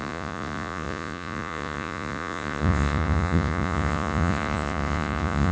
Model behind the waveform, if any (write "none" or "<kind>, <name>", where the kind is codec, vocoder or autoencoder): vocoder, Vocos